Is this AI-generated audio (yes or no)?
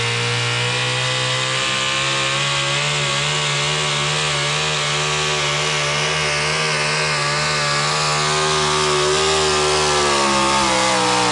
no